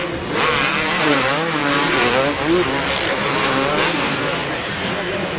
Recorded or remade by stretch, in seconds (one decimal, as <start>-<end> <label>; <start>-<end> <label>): 0.0-1.0 recorded; 1.0-1.6 remade; 1.6-3.9 recorded; 3.9-5.4 remade